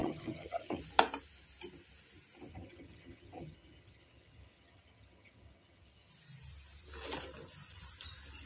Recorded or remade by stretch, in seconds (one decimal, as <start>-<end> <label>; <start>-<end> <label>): 0.0-0.8 remade; 0.8-2.5 recorded; 2.5-6.1 remade; 6.1-8.5 recorded